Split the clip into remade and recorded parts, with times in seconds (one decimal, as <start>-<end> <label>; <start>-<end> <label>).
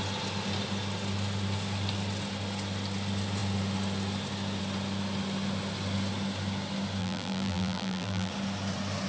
0.0-7.0 recorded; 7.0-8.3 remade; 8.3-9.1 recorded